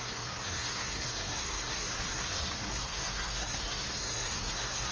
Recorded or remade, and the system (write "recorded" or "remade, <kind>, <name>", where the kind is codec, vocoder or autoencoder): remade, codec, SNAC